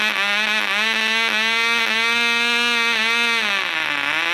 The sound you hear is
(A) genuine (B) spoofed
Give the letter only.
A